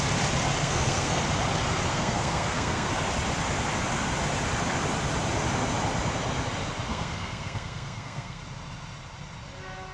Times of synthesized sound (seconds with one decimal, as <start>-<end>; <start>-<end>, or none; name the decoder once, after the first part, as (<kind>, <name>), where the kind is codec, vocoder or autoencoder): 0.6-1.2 (codec, SNAC); 1.9-2.9; 6.9-8.4